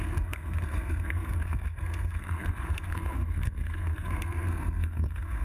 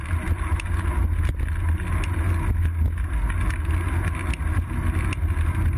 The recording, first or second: second